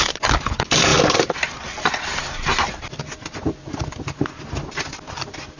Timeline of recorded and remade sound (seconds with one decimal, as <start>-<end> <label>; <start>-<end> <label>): 0.0-5.6 recorded